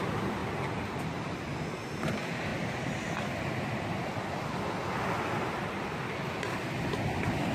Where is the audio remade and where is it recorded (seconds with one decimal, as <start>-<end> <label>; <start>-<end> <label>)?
0.0-0.4 recorded; 0.4-1.0 remade; 1.0-7.5 recorded

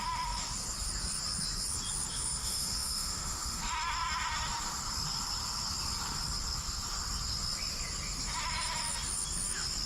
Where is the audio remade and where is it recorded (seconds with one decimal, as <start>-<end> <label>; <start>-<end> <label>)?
0.0-2.1 recorded; 2.1-3.6 remade; 3.6-9.9 recorded

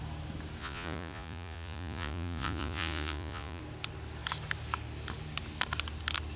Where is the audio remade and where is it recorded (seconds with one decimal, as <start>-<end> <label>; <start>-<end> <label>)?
0.0-0.6 recorded; 0.6-3.6 remade; 3.6-6.4 recorded

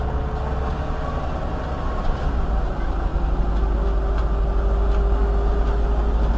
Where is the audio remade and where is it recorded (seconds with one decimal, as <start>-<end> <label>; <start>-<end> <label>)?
0.0-6.4 recorded

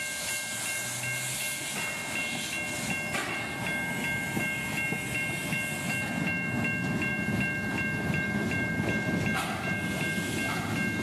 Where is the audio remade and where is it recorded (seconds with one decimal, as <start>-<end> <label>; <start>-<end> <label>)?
0.0-11.0 recorded

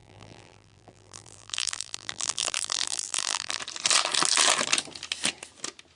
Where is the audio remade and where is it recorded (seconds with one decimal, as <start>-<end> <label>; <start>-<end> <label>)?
0.0-3.6 remade; 3.6-6.0 recorded